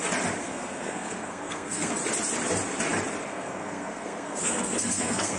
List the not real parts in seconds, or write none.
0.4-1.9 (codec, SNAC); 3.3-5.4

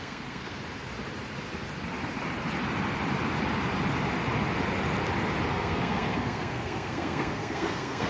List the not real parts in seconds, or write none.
0.0-0.6 (codec, SNAC); 5.5-8.1

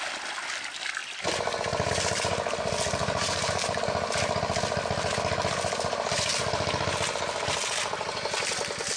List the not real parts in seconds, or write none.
3.0-3.8 (vocoder, BigVGAN v2)

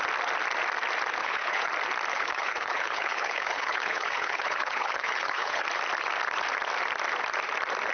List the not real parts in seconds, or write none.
1.2-1.7 (codec, HILCodec); 2.1-5.6

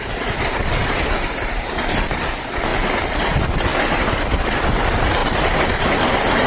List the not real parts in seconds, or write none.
0.8-2.2 (vocoder, BigVGAN v2); 5.2-6.5